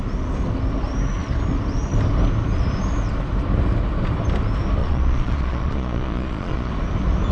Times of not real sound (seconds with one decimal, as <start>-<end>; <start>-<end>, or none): 4.8-6.7

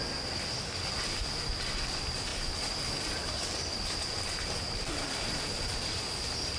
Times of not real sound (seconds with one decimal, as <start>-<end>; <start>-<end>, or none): none

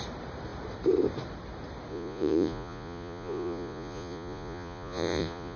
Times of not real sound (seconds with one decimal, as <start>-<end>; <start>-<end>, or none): 1.9-5.6

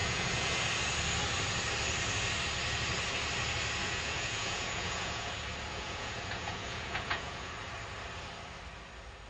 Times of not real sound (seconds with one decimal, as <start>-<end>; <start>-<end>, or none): 0.0-0.6; 3.8-5.3; 5.7-7.5

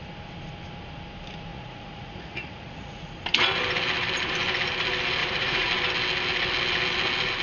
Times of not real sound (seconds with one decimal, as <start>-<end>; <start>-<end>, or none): 1.5-3.1; 5.2-5.7